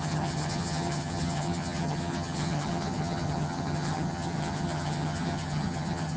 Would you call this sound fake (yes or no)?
yes